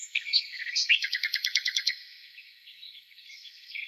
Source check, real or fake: fake